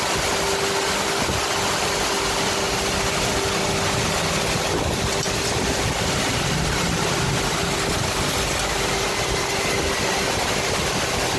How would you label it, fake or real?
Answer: real